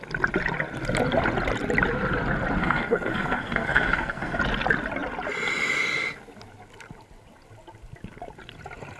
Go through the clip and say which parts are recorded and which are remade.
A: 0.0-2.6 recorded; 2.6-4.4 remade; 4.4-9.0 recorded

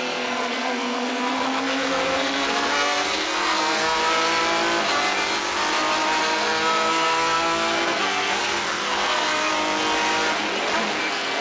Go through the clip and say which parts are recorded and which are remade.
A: 0.0-4.0 remade; 4.0-6.2 recorded; 6.2-9.5 remade; 9.5-11.0 recorded; 11.0-11.4 remade